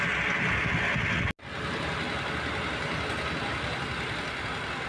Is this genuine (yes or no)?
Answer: yes